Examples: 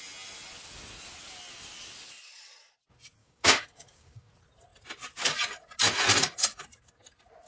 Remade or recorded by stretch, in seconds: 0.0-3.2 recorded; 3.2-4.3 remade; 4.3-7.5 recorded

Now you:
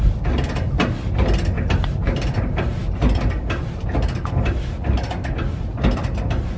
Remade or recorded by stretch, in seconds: 0.0-6.6 recorded

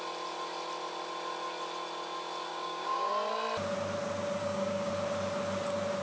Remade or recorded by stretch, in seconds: 0.0-2.5 recorded; 2.5-3.1 remade; 3.1-4.4 recorded; 4.4-4.9 remade; 4.9-6.0 recorded

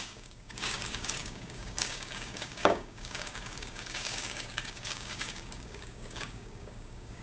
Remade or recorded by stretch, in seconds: 0.0-7.2 remade

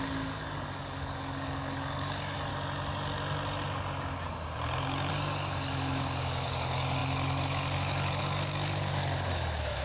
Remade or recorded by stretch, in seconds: 0.0-2.5 remade; 2.5-5.1 recorded; 5.1-9.8 remade

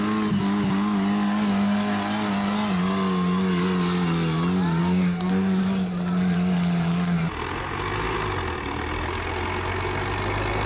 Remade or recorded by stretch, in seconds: 0.0-4.8 recorded; 4.8-5.6 remade; 5.6-10.7 recorded